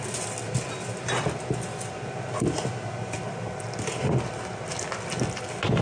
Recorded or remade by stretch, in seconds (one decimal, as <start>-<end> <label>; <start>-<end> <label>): 0.0-5.8 recorded